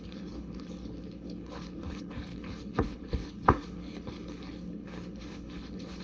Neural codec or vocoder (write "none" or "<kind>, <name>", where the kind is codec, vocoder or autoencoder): codec, HILCodec